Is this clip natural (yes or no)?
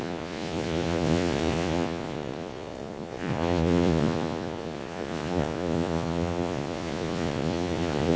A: no